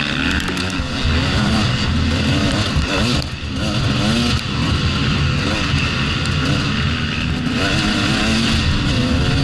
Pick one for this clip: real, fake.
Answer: real